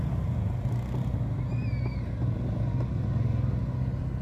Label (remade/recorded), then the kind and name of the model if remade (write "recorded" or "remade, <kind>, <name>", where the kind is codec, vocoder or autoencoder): recorded